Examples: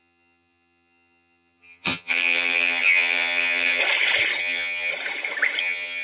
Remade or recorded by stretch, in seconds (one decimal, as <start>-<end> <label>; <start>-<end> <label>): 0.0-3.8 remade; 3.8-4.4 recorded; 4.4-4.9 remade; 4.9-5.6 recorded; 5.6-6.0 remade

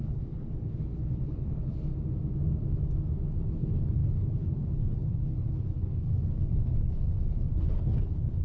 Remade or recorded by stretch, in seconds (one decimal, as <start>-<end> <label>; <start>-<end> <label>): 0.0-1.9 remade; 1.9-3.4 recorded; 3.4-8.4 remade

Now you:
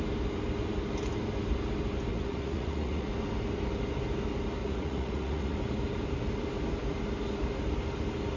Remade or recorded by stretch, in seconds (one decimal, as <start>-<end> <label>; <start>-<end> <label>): 0.0-2.1 recorded; 2.1-3.1 remade; 3.1-4.6 recorded; 4.6-5.6 remade; 5.6-8.4 recorded